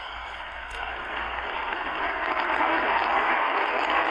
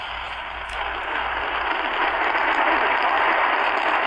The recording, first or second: second